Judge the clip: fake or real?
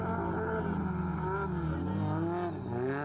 real